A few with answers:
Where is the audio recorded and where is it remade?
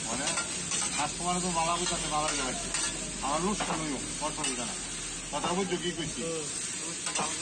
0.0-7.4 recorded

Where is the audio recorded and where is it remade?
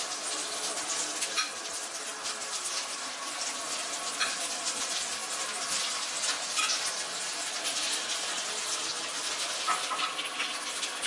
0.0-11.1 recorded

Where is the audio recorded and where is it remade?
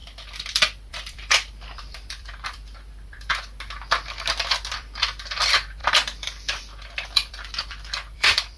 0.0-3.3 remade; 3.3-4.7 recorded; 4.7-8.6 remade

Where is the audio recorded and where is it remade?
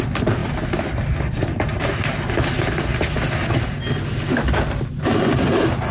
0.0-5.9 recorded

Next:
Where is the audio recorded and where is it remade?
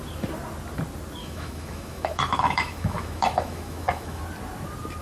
0.0-1.2 recorded; 1.2-4.2 remade; 4.2-5.0 recorded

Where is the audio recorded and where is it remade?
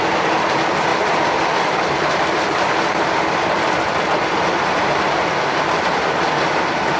0.0-7.0 remade